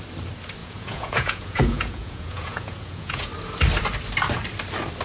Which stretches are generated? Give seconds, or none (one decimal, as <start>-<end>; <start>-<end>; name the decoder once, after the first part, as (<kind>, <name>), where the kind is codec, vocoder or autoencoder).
0.6-3.3 (vocoder, Vocos)